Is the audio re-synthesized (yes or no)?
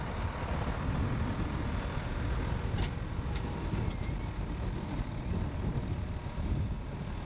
no